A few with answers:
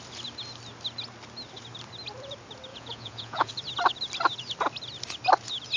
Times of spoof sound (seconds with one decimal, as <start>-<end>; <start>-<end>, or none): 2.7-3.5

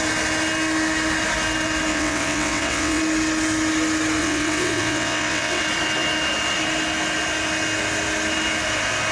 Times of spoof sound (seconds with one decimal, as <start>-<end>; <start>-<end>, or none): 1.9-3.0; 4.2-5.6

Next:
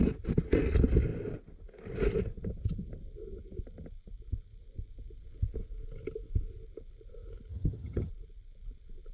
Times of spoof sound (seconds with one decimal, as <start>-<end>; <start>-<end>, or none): 7.5-8.1